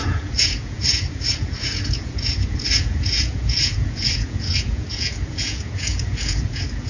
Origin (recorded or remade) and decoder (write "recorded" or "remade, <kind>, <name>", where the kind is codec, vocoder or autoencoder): remade, vocoder, Vocos